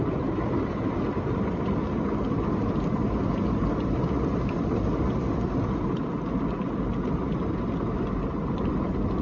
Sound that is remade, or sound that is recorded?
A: recorded